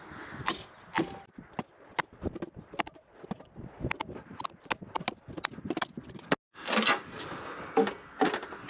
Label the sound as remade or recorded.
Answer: recorded